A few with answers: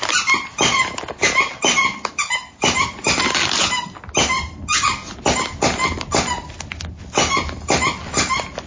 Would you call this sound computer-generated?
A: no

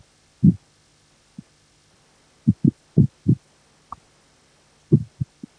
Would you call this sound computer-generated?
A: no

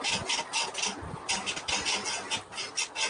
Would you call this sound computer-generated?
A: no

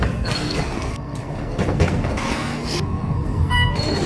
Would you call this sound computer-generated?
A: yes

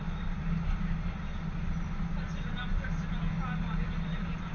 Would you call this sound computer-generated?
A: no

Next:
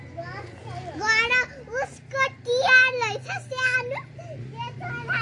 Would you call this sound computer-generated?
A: no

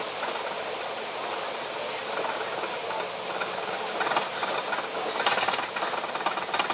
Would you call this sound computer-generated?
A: no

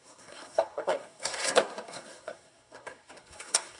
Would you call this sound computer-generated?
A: yes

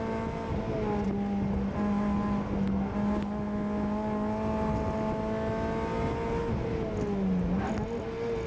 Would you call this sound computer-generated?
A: no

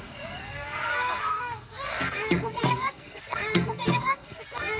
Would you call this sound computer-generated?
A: yes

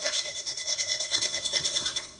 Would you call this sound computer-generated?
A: yes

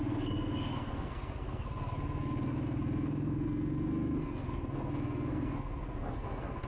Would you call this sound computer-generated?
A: yes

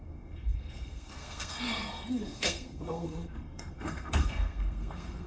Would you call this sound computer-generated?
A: yes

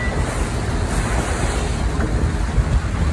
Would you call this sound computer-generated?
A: no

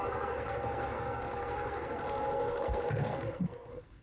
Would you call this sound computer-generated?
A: yes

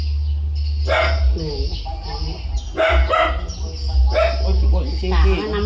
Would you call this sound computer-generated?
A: no